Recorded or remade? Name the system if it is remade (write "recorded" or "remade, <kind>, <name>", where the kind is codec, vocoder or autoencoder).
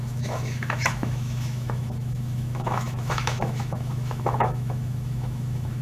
remade, autoencoder, DAC-VAE